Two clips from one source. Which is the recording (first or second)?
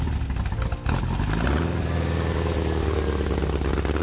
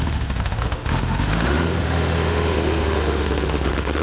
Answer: first